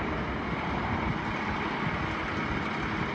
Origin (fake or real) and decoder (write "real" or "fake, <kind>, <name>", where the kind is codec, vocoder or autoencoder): real